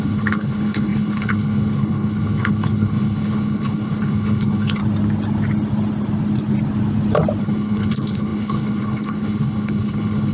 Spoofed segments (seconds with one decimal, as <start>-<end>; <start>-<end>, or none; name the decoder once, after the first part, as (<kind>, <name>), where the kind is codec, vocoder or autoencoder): 0.0-4.8 (codec, HILCodec); 7.4-10.3